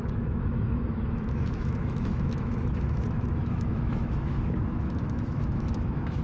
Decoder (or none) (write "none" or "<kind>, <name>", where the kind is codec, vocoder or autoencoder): autoencoder, DAC-VAE